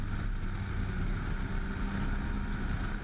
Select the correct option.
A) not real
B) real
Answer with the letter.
B